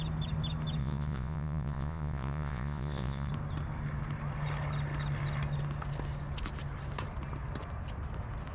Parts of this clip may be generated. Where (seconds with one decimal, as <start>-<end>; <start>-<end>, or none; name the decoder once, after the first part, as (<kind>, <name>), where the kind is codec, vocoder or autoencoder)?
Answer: 0.8-3.3 (vocoder, Vocos)